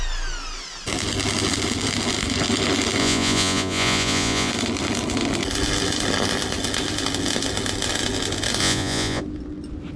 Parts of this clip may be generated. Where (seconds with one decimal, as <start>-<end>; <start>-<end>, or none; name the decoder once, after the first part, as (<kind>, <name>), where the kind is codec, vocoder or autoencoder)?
3.0-4.5 (vocoder, Vocos); 8.6-9.2